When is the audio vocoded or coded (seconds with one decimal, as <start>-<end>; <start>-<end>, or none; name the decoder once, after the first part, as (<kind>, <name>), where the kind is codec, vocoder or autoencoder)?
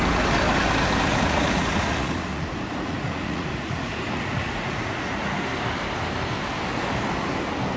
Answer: 1.1-5.3 (vocoder, Vocos)